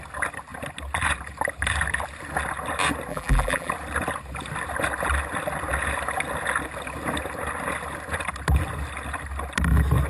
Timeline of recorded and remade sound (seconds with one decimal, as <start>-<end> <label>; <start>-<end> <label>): 0.0-3.1 recorded; 3.1-3.7 remade; 3.7-10.1 recorded